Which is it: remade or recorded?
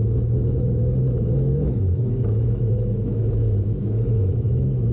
remade